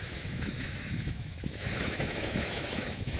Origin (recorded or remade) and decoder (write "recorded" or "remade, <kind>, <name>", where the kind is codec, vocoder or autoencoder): remade, autoencoder, DAC-VAE